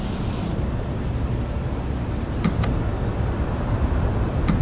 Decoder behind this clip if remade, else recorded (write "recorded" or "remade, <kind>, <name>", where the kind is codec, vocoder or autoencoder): recorded